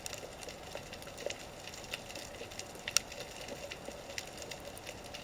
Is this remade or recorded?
recorded